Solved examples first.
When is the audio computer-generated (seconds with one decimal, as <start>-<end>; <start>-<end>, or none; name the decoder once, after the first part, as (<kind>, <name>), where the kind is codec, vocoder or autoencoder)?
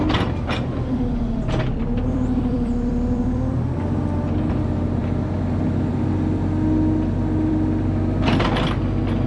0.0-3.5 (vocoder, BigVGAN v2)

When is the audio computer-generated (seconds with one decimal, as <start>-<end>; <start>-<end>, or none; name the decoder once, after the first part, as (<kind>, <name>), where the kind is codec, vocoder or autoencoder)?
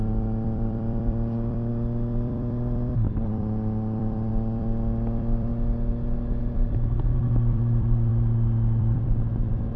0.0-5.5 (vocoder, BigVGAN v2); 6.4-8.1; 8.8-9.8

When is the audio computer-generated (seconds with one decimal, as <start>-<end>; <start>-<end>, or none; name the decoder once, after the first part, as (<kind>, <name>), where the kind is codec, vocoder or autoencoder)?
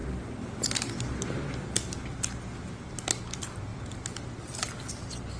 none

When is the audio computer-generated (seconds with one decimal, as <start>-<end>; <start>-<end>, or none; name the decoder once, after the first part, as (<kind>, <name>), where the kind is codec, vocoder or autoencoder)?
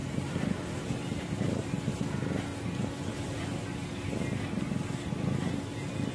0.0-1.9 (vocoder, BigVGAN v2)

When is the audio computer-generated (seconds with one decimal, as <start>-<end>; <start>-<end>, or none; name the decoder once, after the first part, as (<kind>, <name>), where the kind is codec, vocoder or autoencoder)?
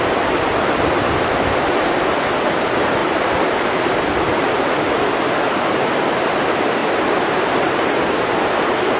3.0-3.9 (vocoder, BigVGAN v2); 4.3-5.0; 6.8-8.1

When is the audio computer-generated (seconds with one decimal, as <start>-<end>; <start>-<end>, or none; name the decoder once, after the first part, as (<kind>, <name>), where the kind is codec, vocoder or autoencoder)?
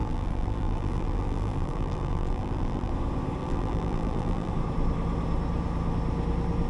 0.0-2.9 (vocoder, BigVGAN v2); 3.4-4.5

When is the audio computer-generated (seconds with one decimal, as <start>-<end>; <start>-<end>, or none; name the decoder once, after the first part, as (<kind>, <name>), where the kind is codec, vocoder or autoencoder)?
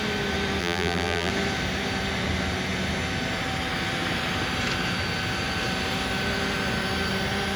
0.6-1.3 (vocoder, BigVGAN v2)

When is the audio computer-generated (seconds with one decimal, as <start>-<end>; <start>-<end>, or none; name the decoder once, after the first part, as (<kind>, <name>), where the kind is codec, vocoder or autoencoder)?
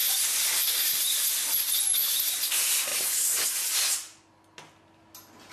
none